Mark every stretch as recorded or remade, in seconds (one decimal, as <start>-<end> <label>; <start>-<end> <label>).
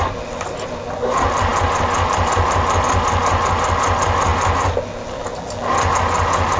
0.0-6.6 recorded